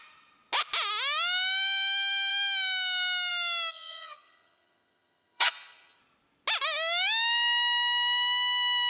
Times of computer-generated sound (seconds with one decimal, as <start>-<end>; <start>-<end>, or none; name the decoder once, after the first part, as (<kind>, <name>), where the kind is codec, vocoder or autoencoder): 3.7-6.0 (vocoder, HiFi-GAN)